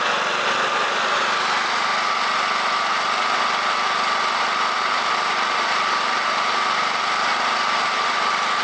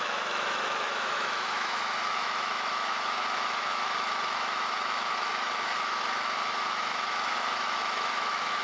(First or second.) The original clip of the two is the first